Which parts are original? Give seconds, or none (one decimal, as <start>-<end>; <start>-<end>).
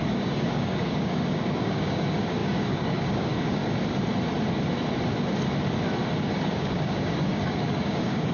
3.6-6.3